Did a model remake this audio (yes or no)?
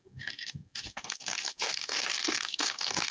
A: yes